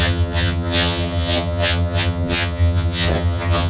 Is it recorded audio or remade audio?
remade